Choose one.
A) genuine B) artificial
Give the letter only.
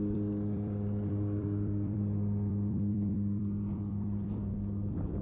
B